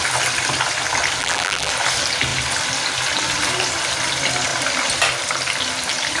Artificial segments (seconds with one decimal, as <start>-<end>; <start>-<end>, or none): 1.2-1.7